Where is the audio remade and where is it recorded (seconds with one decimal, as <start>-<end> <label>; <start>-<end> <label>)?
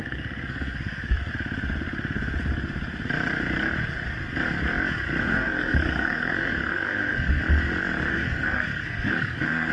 0.0-1.3 remade; 1.3-5.2 recorded; 5.2-7.4 remade; 7.4-8.1 recorded; 8.1-9.7 remade